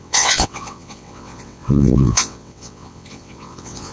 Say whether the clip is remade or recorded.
remade